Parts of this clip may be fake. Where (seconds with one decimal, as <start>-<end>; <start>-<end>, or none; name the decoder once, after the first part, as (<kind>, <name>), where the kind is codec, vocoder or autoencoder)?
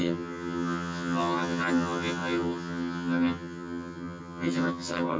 0.0-5.2 (vocoder, HiFi-GAN)